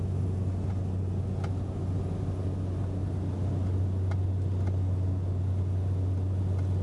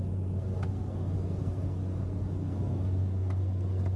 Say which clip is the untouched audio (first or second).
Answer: first